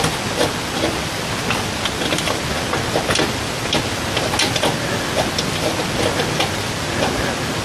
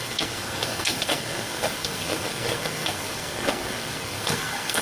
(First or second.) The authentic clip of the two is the first